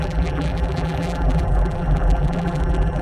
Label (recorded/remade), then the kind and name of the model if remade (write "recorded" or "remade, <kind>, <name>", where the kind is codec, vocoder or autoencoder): remade, vocoder, BigVGAN v2